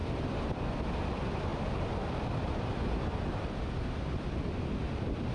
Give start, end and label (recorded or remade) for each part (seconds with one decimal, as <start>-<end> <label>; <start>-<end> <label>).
0.0-1.5 recorded; 1.5-3.0 remade; 3.0-5.3 recorded